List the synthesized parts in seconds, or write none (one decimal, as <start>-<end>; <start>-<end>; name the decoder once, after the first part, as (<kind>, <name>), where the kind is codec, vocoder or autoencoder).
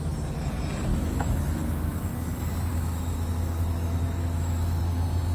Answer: 0.9-2.0 (autoencoder, DAC-VAE); 2.7-4.8